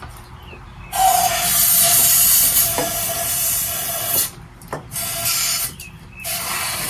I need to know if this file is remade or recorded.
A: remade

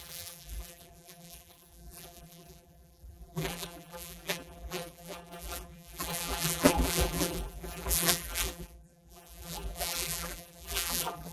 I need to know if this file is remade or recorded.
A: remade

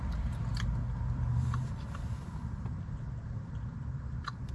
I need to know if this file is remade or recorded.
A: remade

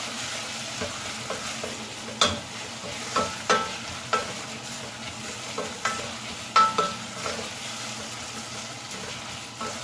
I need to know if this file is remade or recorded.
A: recorded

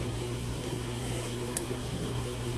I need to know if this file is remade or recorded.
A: remade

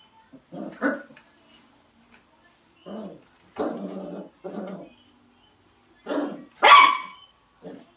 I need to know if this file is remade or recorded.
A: recorded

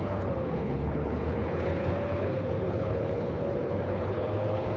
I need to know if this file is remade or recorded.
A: remade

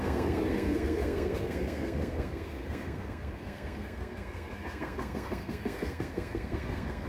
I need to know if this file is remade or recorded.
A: remade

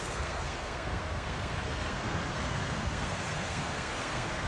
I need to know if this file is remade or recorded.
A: remade